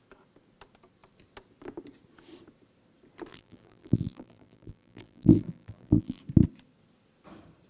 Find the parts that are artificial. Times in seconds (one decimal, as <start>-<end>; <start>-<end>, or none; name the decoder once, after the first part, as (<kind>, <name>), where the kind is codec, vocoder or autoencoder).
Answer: 3.3-6.2 (vocoder, BigVGAN v2)

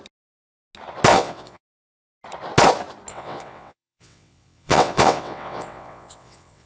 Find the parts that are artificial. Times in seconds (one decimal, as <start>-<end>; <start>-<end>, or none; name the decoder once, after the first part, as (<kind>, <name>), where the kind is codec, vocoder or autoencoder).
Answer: 1.1-1.6 (vocoder, WaveNeXt); 3.1-6.7

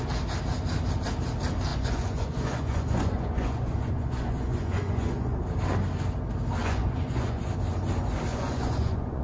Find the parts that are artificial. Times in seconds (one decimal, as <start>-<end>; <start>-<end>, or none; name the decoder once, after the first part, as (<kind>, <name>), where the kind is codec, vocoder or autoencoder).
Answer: 1.7-5.4 (vocoder, Vocos); 6.6-7.5; 8.3-9.2